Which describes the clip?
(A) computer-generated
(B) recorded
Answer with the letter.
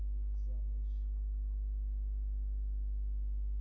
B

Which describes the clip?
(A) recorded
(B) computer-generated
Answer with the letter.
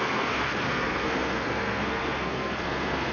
B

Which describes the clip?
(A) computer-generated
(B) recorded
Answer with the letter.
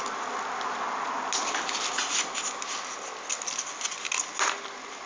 B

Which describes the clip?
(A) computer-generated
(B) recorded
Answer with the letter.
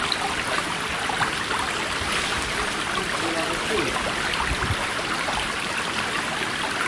B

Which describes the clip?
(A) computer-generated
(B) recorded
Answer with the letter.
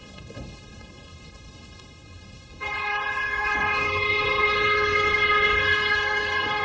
A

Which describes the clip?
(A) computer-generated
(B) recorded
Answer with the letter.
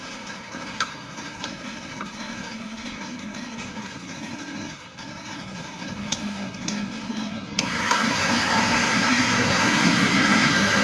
A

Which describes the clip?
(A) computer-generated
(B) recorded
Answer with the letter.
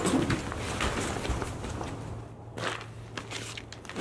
B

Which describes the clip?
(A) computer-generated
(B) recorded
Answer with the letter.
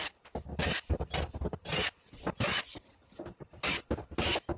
B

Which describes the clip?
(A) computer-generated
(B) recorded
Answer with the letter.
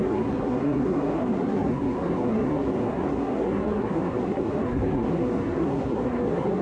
A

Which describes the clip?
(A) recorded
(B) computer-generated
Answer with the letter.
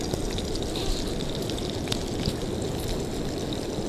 A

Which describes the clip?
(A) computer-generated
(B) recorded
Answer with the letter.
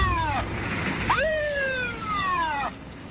A